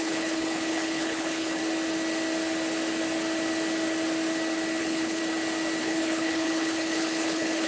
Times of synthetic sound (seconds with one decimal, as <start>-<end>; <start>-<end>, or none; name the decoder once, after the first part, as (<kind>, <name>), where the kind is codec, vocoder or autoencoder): 0.0-1.6 (codec, HILCodec); 4.8-5.2; 5.8-7.7